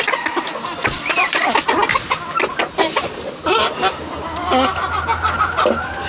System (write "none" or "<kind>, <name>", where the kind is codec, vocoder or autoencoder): none